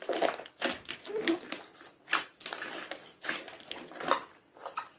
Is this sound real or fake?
real